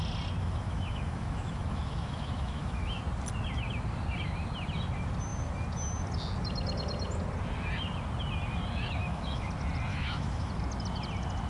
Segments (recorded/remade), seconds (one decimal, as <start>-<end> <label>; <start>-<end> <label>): 0.0-0.4 recorded; 0.4-3.0 remade; 3.0-9.0 recorded; 9.0-9.5 remade; 9.5-9.9 recorded; 9.9-10.5 remade; 10.5-11.5 recorded